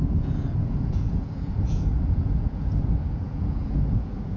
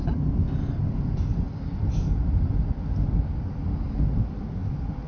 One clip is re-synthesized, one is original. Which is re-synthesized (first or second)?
first